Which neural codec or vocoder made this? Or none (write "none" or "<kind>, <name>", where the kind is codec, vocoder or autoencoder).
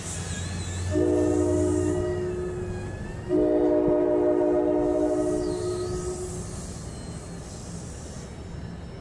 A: none